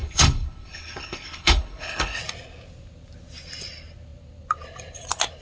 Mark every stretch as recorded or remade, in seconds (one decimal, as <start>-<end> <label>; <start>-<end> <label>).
0.0-2.2 remade; 2.2-5.4 recorded